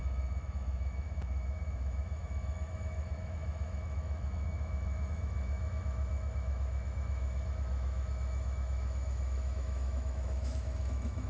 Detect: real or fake fake